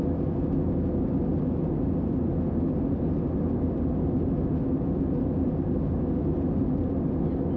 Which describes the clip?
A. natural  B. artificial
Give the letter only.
A